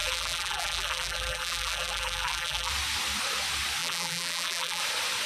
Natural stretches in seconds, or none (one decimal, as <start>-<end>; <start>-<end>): 2.7-3.8; 4.8-5.3